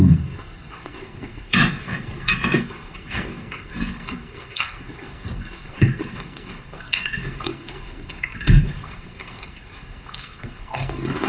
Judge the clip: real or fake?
fake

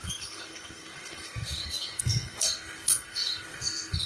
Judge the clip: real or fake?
fake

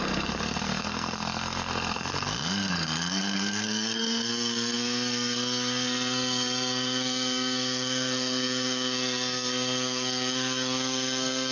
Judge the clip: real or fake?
fake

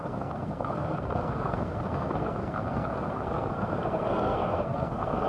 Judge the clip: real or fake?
fake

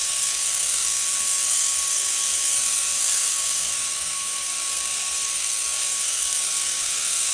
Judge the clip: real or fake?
fake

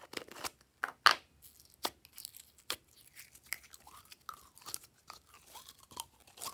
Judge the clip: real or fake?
real